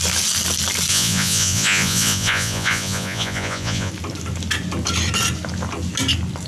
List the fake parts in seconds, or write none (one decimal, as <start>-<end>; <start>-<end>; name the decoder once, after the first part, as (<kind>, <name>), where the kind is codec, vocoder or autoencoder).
0.9-3.9 (vocoder, Vocos)